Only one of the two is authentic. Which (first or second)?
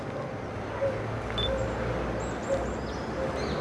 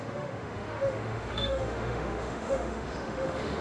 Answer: first